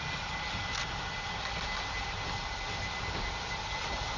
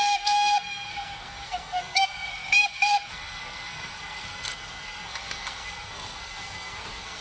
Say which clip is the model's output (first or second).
second